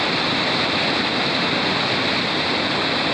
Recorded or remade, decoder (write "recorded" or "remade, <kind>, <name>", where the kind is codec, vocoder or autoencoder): recorded